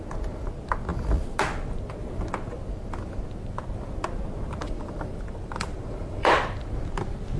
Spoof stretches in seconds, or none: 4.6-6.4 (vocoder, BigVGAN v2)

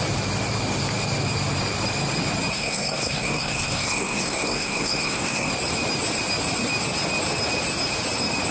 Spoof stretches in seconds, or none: 2.5-5.5 (codec, SNAC)

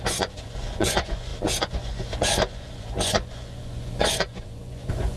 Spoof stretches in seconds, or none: 0.0-5.2 (vocoder, Vocos)

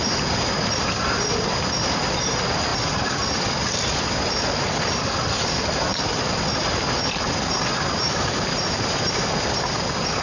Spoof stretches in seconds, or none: none

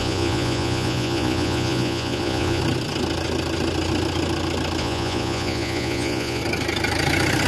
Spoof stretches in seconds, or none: 0.0-2.6 (vocoder, Vocos); 4.8-6.4

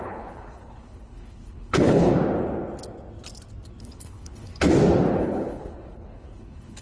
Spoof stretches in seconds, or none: 0.0-2.1 (codec, HILCodec); 3.8-4.5; 5.2-6.8